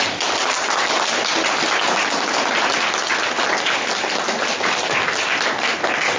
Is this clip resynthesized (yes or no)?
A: no